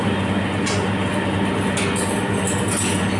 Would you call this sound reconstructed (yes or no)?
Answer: no